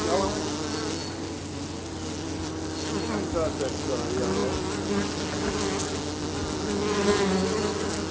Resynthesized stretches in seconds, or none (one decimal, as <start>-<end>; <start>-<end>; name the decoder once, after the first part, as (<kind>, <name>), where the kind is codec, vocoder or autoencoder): none